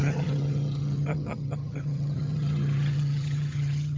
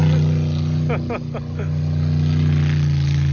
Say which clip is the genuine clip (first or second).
second